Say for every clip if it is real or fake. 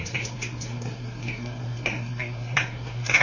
fake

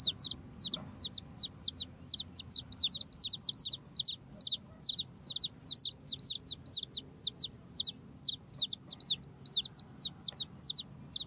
real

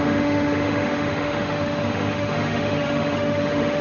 fake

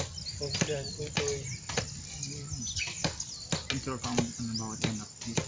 real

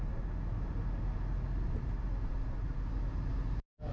real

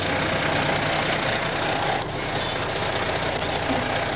real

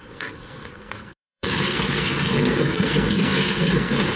fake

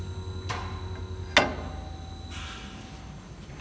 real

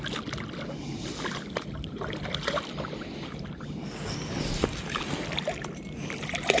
real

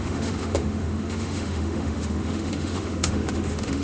fake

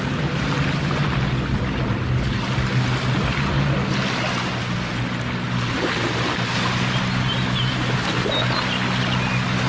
real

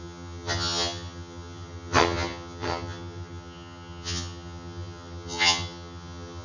fake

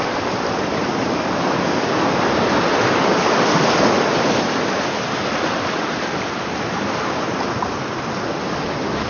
real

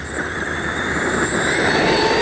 real